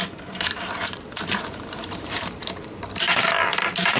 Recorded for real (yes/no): no